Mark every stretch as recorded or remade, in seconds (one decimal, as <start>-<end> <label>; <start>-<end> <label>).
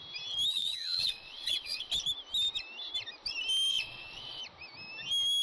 0.0-0.5 recorded; 0.5-1.9 remade; 1.9-3.7 recorded; 3.7-4.4 remade; 4.4-5.4 recorded